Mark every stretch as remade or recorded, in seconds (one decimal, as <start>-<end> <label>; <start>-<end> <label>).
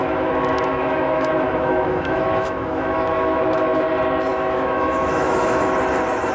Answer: 0.0-3.8 remade; 3.8-4.3 recorded; 4.3-5.7 remade; 5.7-6.3 recorded